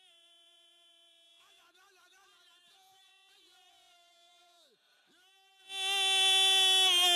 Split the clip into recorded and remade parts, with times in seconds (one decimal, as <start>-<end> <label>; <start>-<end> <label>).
0.0-5.0 remade; 5.0-7.2 recorded

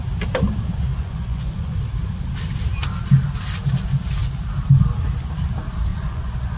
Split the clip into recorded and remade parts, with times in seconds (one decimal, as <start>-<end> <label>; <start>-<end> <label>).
0.0-0.9 recorded; 0.9-1.8 remade; 1.8-5.9 recorded; 5.9-6.6 remade

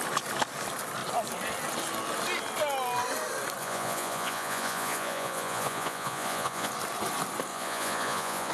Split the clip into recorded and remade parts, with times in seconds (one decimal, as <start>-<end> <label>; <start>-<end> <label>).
0.0-3.6 recorded; 3.6-6.7 remade; 6.7-7.5 recorded; 7.5-8.5 remade

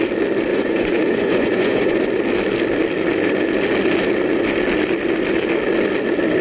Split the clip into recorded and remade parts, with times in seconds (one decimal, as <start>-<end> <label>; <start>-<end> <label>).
0.0-0.5 recorded; 0.5-2.0 remade; 2.0-6.4 recorded

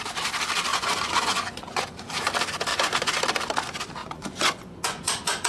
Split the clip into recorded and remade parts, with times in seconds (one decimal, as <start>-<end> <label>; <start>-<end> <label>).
0.0-0.7 recorded; 0.7-2.3 remade; 2.3-2.7 recorded; 2.7-3.2 remade; 3.2-4.0 recorded; 4.0-5.5 remade

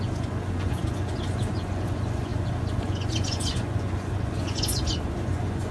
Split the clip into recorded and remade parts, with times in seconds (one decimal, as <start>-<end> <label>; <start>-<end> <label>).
0.0-5.7 remade

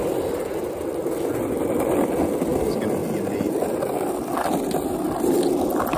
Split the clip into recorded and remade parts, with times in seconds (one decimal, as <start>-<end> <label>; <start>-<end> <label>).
0.0-6.0 recorded